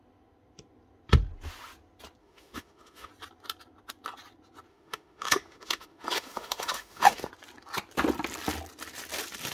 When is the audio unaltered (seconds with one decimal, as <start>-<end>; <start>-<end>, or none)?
0.0-2.2; 3.1-4.7; 7.3-9.5